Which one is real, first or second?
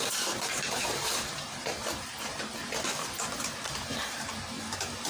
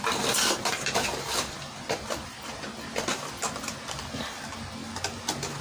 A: second